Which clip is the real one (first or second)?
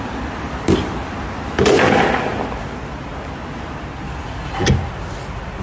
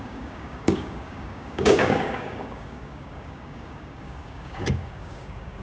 first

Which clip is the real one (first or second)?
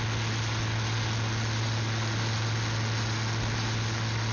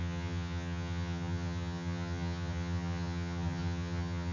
first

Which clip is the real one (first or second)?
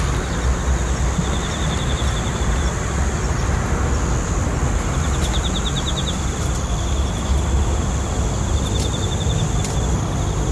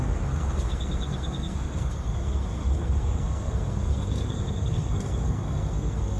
first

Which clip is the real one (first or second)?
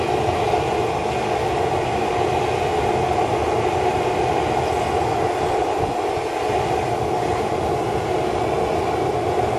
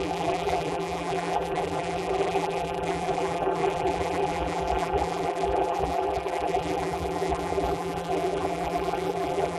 first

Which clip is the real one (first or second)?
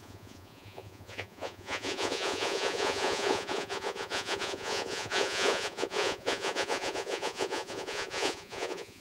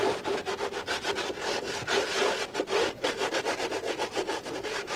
second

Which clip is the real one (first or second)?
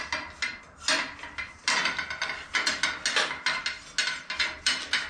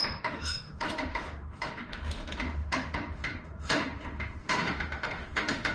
first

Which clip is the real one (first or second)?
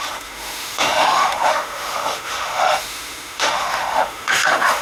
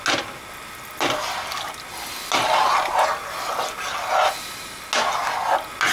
second